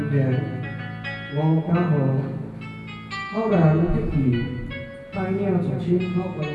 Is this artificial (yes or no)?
no